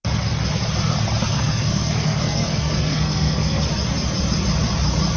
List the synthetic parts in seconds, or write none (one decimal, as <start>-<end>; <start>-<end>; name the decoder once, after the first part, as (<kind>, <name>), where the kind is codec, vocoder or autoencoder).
1.3-3.7 (codec, SNAC)